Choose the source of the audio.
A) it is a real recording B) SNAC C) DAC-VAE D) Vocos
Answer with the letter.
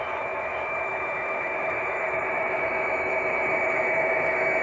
C